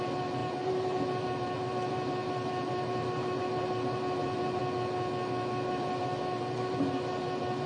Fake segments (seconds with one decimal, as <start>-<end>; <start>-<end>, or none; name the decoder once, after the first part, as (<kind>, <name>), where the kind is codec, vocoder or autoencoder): 0.0-4.6 (vocoder, BigVGAN v2); 5.7-7.7